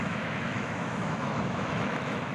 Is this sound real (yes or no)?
no